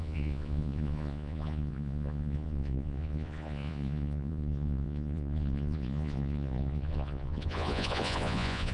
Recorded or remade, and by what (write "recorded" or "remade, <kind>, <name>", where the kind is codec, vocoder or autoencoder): remade, vocoder, Vocos